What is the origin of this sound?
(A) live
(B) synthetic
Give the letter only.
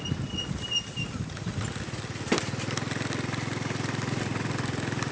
A